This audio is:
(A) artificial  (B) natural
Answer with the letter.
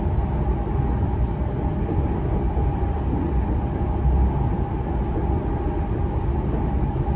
B